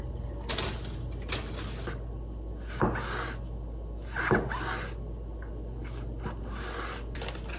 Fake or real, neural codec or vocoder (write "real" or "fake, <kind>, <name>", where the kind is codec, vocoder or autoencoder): real